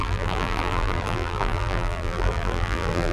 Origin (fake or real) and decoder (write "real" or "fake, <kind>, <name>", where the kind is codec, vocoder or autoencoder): fake, vocoder, BigVGAN v2